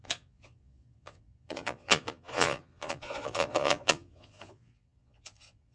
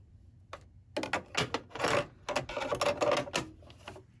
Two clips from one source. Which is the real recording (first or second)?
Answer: second